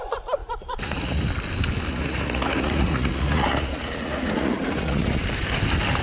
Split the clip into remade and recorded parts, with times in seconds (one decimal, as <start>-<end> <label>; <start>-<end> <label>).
0.0-0.4 recorded; 0.4-1.3 remade; 1.3-1.9 recorded; 1.9-5.2 remade; 5.2-6.0 recorded